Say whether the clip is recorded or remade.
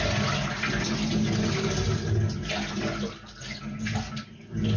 recorded